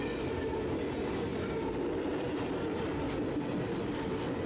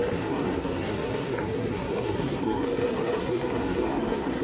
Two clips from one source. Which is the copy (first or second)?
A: second